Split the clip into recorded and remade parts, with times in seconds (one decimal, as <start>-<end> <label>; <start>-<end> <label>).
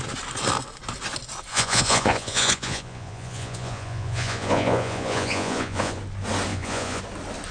0.0-1.5 recorded; 1.5-6.0 remade; 6.0-6.5 recorded; 6.5-7.0 remade; 7.0-7.5 recorded